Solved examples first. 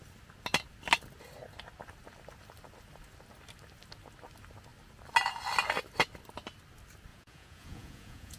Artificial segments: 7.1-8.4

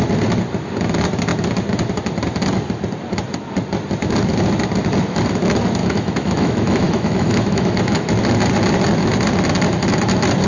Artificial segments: 5.8-8.1

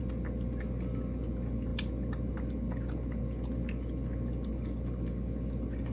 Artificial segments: none